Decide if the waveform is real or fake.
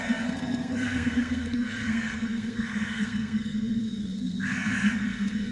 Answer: fake